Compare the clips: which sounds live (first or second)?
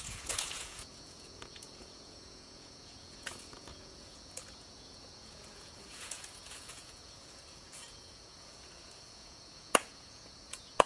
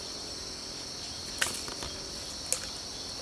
second